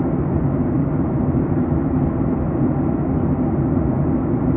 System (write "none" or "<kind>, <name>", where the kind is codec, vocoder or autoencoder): none